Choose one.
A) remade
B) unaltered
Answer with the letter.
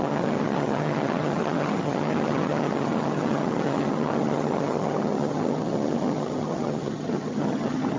A